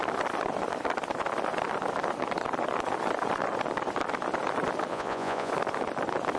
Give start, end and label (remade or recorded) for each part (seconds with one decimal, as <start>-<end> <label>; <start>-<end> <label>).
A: 0.0-4.9 recorded; 4.9-5.5 remade; 5.5-6.4 recorded